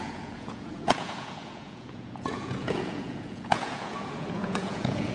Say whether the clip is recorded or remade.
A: remade